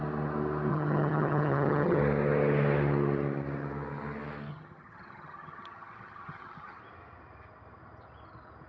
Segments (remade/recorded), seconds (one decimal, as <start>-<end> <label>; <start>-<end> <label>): 0.0-0.7 recorded; 0.7-2.0 remade; 2.0-4.5 recorded; 4.5-6.8 remade; 6.8-8.7 recorded

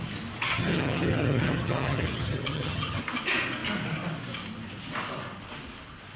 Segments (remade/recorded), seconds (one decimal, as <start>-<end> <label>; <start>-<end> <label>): 0.0-0.5 recorded; 0.5-3.0 remade; 3.0-6.2 recorded